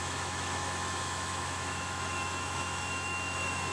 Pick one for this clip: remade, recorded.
remade